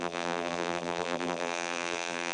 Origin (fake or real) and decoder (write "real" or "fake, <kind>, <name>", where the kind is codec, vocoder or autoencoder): fake, vocoder, BigVGAN v2